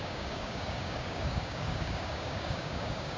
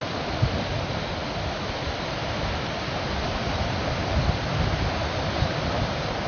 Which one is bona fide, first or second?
second